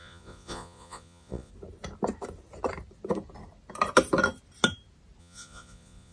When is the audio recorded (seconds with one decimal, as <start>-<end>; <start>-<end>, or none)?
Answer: 1.5-5.2